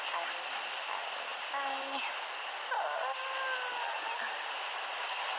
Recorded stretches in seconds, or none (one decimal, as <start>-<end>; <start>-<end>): 0.0-5.4